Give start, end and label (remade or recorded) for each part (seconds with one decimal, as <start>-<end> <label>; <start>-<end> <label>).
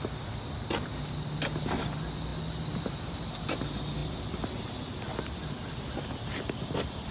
0.0-7.1 recorded